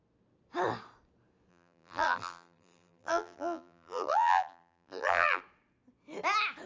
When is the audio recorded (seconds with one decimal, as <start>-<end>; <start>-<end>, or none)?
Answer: 0.0-1.5; 5.4-6.7